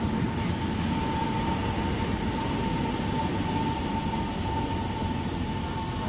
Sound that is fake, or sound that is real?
real